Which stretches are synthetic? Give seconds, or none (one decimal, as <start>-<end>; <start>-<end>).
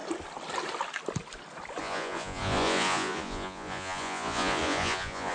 1.8-5.3